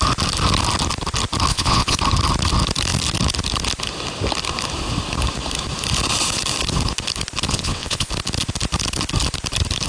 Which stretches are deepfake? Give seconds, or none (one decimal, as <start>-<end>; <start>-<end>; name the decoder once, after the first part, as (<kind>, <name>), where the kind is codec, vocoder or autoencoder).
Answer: 1.5-2.0 (vocoder, WaveNeXt); 7.5-8.1